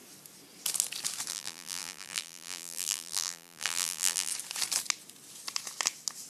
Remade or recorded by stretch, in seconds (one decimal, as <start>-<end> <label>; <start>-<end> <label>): 0.0-1.3 recorded; 1.3-4.3 remade; 4.3-6.3 recorded

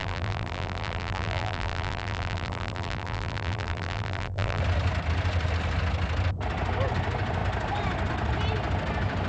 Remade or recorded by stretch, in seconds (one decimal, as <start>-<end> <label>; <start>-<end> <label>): 0.0-4.6 remade; 4.6-9.3 recorded

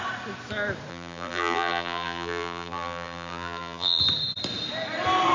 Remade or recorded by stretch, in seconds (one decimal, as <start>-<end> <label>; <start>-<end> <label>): 0.0-0.9 recorded; 0.9-4.0 remade; 4.0-5.3 recorded

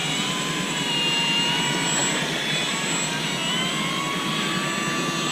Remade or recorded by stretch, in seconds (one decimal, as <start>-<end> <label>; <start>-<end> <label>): 0.0-0.9 remade; 0.9-5.3 recorded

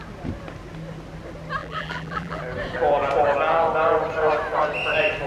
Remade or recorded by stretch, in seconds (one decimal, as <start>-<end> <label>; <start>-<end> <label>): 0.0-1.6 recorded; 1.6-2.4 remade; 2.4-5.3 recorded

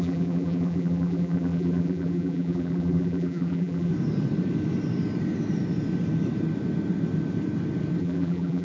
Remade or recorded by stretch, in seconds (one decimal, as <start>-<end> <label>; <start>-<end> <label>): 0.0-3.9 remade; 3.9-8.0 recorded; 8.0-8.6 remade

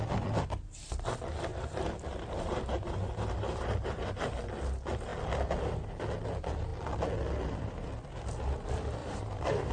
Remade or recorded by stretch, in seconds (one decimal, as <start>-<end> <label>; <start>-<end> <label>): 0.0-1.5 recorded; 1.5-4.3 remade; 4.3-9.0 recorded; 9.0-9.7 remade

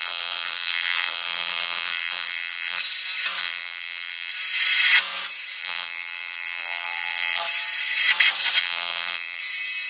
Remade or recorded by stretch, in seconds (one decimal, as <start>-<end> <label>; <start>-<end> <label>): 0.0-2.8 remade; 2.8-3.4 recorded; 3.4-4.3 remade; 4.3-5.6 recorded; 5.6-7.4 remade; 7.4-8.6 recorded; 8.6-9.4 remade; 9.4-9.9 recorded